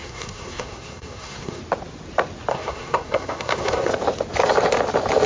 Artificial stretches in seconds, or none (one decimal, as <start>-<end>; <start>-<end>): 0.0-1.6; 2.5-3.9